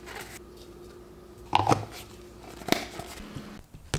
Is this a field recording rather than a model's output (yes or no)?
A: yes